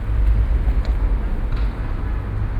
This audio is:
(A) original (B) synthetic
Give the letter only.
A